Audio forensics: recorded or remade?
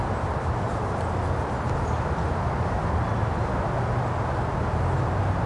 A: recorded